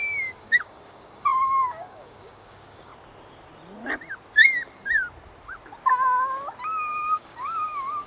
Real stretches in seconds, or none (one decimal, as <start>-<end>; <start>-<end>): 2.9-6.9